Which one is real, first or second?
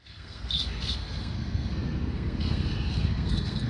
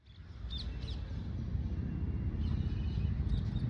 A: second